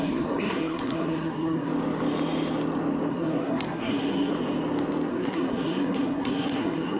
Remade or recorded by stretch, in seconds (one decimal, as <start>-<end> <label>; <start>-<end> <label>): 0.0-1.7 remade; 1.7-3.1 recorded; 3.1-4.3 remade; 4.3-5.1 recorded; 5.1-7.0 remade